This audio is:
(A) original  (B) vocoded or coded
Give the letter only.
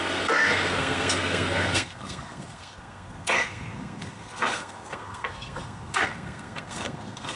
B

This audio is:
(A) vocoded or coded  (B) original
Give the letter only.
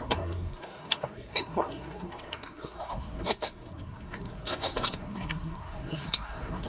A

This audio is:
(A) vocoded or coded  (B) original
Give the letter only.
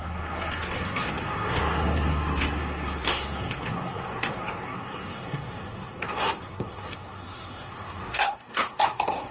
A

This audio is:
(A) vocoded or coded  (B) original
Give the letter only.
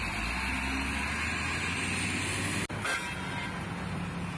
B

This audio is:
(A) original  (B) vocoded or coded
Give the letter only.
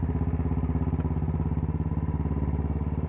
A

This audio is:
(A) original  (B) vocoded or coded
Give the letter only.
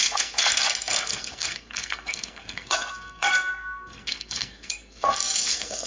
B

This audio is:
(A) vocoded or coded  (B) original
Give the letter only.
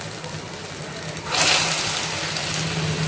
B